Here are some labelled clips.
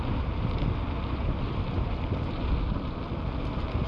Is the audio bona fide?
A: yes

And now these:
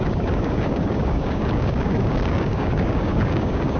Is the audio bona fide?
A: no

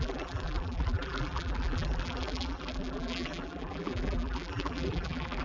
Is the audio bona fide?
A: no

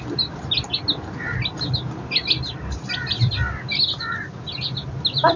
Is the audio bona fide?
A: yes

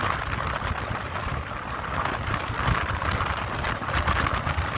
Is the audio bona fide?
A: yes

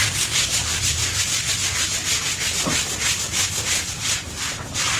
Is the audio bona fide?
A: yes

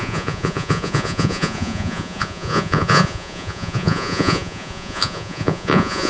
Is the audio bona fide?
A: no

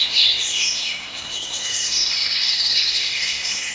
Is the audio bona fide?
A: no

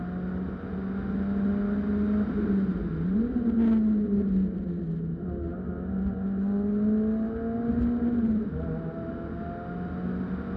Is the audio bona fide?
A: yes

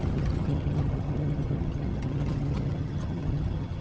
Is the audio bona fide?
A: no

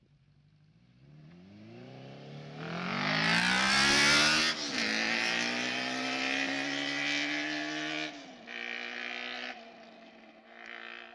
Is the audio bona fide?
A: yes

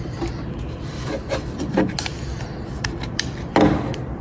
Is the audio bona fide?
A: no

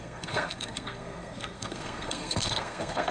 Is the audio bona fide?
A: no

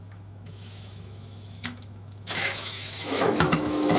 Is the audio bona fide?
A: no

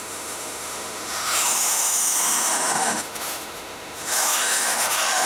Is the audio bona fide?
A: no